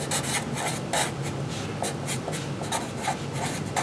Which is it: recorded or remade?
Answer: recorded